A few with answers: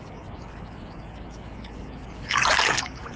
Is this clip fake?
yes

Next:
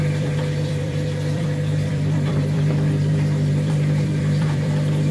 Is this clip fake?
yes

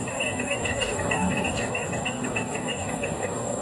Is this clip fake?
yes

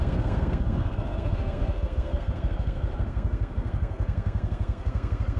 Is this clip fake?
yes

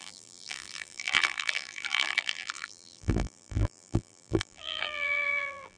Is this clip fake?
yes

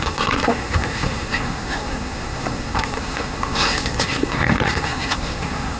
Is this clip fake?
yes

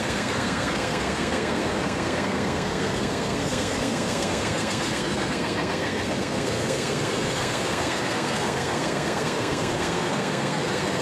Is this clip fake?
yes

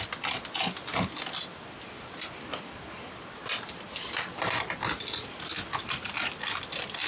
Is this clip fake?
no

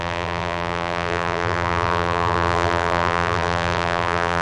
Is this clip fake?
yes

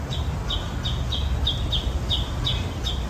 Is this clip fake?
no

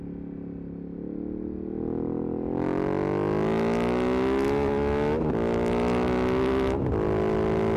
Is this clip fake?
no